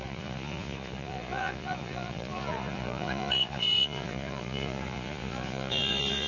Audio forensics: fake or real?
fake